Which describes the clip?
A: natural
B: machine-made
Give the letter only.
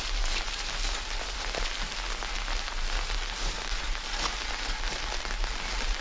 A